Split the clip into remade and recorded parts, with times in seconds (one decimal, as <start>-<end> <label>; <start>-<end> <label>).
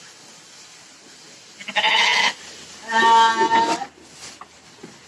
0.0-5.1 recorded